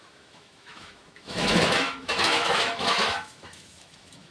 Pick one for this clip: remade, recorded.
remade